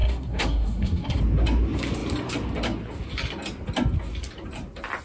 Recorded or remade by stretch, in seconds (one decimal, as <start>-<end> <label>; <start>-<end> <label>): 0.0-1.2 remade; 1.2-5.0 recorded